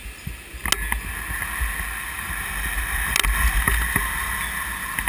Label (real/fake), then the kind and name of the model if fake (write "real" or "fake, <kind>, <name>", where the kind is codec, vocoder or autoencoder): real